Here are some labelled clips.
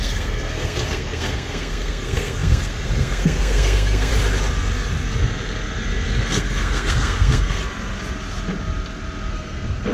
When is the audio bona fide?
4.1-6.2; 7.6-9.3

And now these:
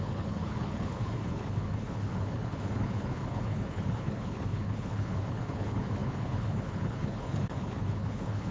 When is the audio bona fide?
none

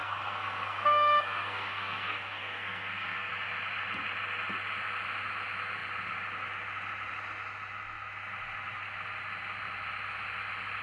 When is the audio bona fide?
3.3-10.8

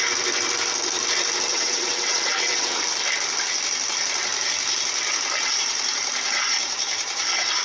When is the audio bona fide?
0.0-1.5; 2.8-7.6

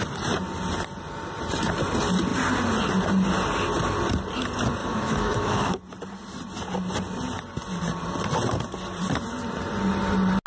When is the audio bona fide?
0.0-4.8; 5.7-10.5

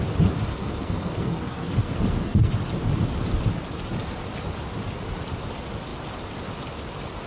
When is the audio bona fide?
0.0-0.5; 2.5-7.3

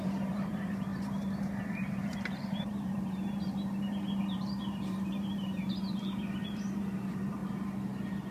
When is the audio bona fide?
7.4-8.3